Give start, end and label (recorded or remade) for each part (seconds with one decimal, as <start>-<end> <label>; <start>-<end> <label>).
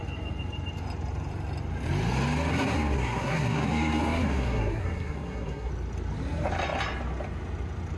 0.0-2.5 recorded; 2.5-5.7 remade; 5.7-8.0 recorded